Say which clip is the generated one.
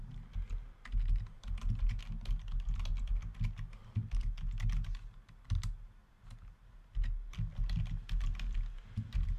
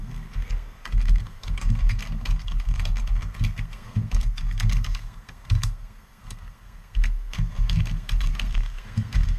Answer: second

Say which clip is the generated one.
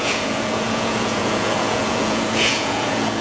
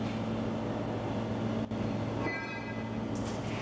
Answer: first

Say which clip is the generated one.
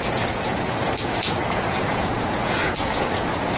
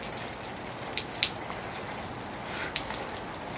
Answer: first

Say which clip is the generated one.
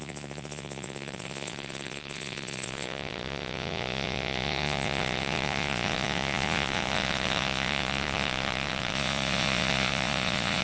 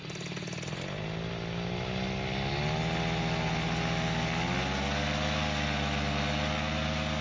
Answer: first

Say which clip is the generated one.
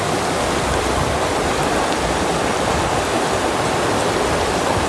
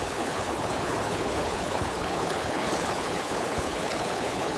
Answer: second